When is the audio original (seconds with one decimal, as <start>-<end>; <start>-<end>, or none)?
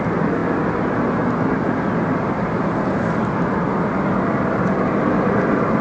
0.0-5.8